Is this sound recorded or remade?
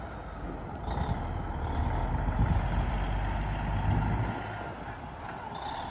recorded